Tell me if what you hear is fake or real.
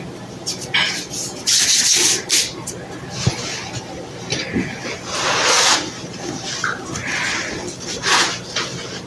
real